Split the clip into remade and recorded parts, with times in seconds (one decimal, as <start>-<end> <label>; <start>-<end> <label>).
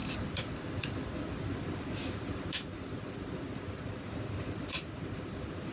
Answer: 0.0-5.7 recorded